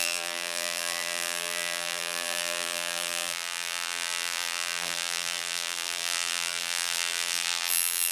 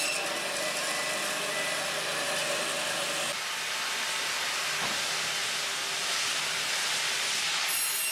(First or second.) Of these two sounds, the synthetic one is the first